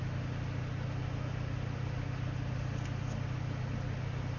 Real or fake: real